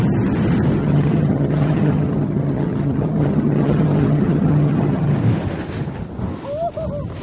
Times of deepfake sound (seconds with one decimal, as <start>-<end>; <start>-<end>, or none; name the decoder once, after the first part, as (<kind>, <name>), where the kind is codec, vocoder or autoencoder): 0.8-5.1 (vocoder, HiFi-GAN)